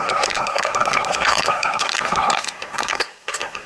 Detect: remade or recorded remade